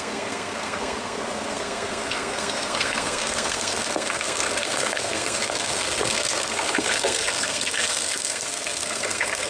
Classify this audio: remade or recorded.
remade